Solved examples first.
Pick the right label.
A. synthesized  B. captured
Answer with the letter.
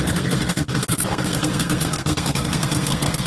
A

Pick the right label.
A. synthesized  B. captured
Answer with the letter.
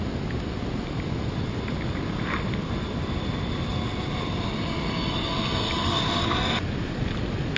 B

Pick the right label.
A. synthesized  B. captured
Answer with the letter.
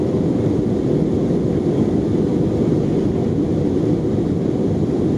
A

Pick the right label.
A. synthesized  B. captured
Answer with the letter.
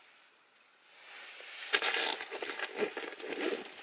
B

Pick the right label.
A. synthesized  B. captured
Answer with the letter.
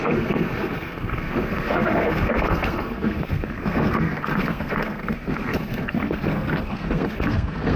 A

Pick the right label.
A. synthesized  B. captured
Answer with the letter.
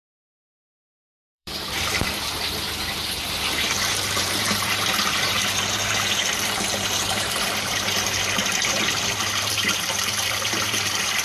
A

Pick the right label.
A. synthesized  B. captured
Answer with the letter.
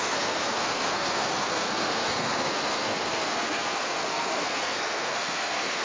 A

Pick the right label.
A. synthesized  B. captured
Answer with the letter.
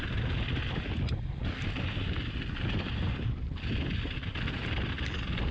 B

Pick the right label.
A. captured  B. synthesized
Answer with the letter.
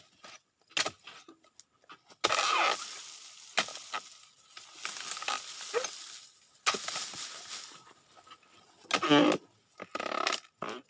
A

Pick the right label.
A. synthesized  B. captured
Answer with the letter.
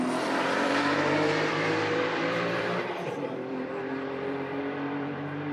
A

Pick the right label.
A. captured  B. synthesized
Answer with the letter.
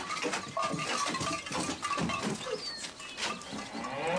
A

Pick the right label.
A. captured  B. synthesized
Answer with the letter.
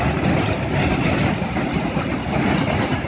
A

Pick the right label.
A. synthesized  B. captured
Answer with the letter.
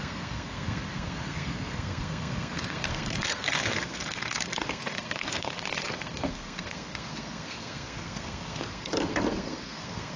A